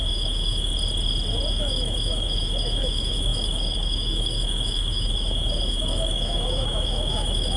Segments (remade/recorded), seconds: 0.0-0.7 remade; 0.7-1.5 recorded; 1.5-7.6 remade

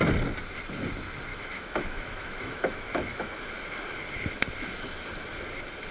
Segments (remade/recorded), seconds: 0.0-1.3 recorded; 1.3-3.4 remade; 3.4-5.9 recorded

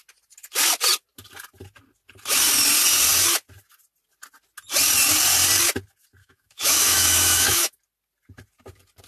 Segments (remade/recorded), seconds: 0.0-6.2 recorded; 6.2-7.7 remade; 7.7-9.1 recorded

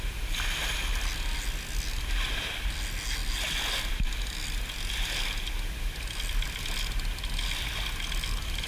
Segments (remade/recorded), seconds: 0.0-8.7 recorded